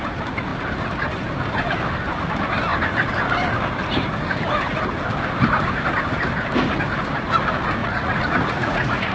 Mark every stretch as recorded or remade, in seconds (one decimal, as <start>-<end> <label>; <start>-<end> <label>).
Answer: 0.0-7.8 recorded; 7.8-9.1 remade